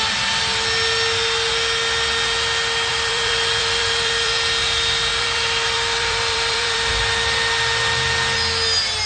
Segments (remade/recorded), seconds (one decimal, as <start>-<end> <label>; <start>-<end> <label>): 0.0-2.9 recorded; 2.9-4.3 remade; 4.3-5.1 recorded; 5.1-6.9 remade; 6.9-9.1 recorded